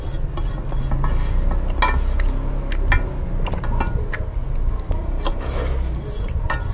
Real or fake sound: real